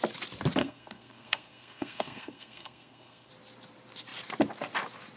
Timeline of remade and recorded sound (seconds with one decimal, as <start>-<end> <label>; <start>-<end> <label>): 0.0-0.6 recorded; 0.6-3.3 remade; 3.3-5.2 recorded